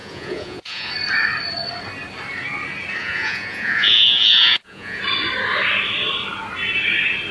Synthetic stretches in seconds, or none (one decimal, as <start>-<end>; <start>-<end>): 0.0-0.9; 3.0-5.0